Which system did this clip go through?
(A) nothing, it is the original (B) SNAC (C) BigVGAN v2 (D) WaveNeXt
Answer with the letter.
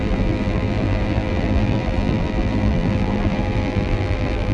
C